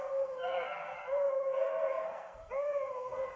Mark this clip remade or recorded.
remade